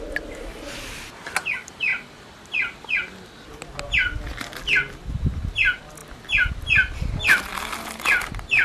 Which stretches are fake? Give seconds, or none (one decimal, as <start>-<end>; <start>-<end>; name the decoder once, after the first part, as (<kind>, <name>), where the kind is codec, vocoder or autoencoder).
none